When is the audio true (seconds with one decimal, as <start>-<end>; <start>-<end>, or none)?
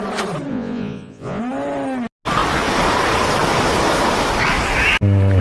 0.0-0.5; 1.4-5.4